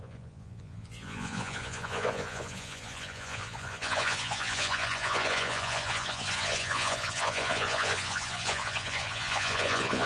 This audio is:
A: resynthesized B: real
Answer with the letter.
A